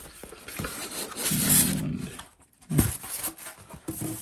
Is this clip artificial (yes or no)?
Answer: no